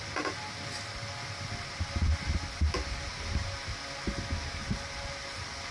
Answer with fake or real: real